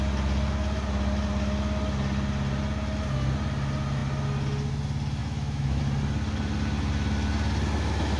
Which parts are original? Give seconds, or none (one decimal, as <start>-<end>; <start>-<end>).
0.0-5.2; 5.8-8.2